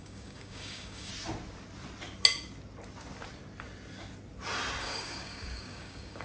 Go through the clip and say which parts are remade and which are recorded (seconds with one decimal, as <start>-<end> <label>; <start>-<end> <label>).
0.0-1.1 remade; 1.1-4.8 recorded; 4.8-6.2 remade